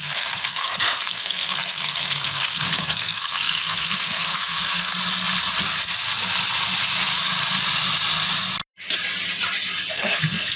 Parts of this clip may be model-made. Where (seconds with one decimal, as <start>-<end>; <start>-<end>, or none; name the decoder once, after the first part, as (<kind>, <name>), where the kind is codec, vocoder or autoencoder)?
0.0-4.9 (codec, SNAC); 9.9-10.6